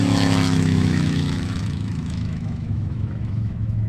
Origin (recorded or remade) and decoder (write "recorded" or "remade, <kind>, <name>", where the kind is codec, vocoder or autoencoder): remade, autoencoder, DAC-VAE